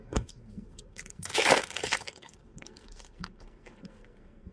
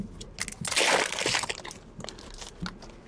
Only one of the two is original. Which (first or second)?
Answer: second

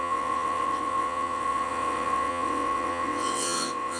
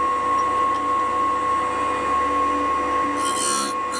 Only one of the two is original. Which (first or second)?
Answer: second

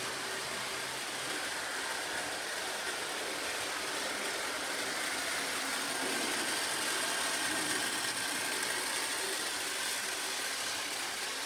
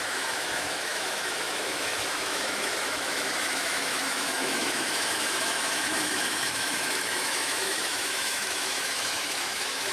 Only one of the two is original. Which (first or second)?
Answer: first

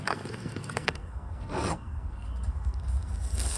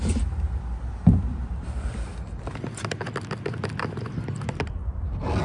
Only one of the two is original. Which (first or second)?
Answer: second